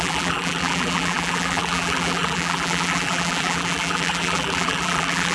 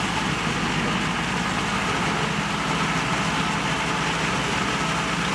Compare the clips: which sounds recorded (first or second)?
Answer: second